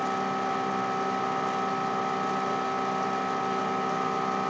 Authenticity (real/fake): real